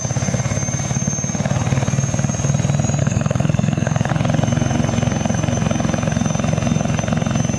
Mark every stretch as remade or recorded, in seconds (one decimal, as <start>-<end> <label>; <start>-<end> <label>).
0.0-3.0 recorded; 3.0-4.1 remade; 4.1-7.6 recorded